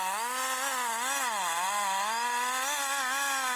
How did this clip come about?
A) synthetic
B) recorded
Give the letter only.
B